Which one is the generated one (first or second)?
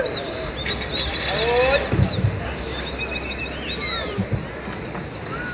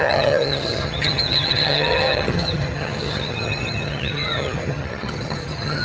second